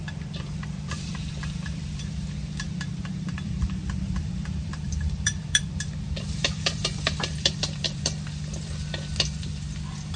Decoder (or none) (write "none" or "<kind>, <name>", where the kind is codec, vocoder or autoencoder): vocoder, BigVGAN v2